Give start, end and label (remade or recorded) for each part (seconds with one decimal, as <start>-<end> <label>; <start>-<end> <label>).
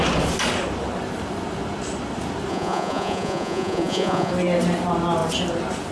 0.0-2.5 recorded; 2.5-4.3 remade; 4.3-5.9 recorded